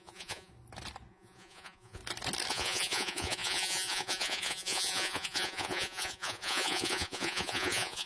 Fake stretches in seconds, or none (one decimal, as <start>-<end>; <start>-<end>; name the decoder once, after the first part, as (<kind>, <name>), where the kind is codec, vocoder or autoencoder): 0.0-0.5 (vocoder, Vocos); 1.1-2.0; 2.5-8.1